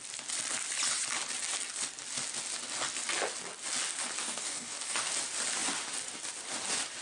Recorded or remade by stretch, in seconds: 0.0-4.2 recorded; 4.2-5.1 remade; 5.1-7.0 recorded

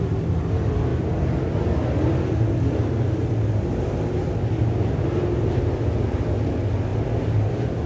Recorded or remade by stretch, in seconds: 0.0-7.9 recorded

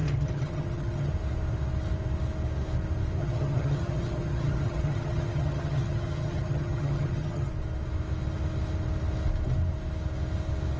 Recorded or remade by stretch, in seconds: 0.0-1.1 remade; 1.1-3.2 recorded; 3.2-7.5 remade; 7.5-10.8 recorded

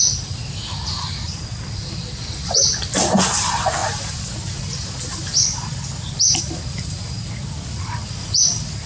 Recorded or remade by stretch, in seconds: 0.0-8.9 recorded